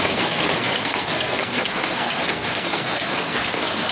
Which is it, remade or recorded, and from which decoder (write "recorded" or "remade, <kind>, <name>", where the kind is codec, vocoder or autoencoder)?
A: remade, codec, SNAC